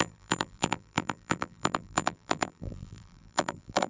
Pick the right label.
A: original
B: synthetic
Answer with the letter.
B